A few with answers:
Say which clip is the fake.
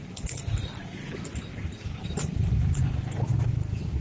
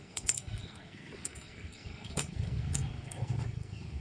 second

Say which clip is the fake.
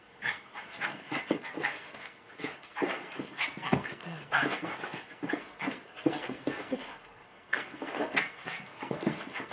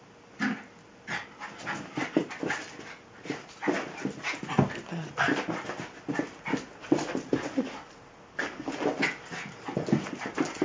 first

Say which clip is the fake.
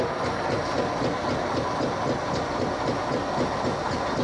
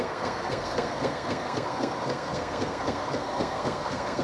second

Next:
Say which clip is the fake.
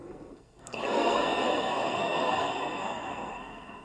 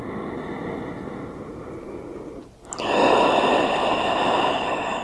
first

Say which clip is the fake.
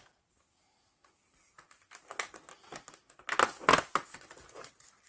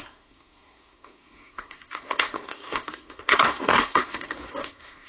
second